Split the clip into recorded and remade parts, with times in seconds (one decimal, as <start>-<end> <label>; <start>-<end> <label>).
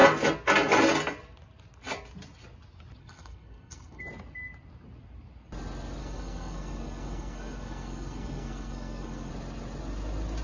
0.0-3.0 recorded; 3.0-4.0 remade; 4.0-6.0 recorded; 6.0-9.3 remade; 9.3-10.4 recorded